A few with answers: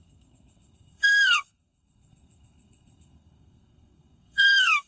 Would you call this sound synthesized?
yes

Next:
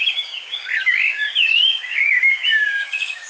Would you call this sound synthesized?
yes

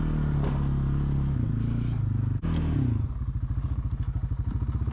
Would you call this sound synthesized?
no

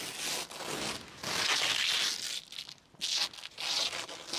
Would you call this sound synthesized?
no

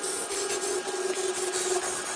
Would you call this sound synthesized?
no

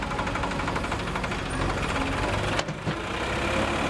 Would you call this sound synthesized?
no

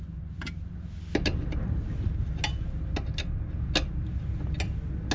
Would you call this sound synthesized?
no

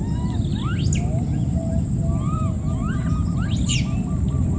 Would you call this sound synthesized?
no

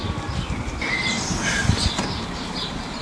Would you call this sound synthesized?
no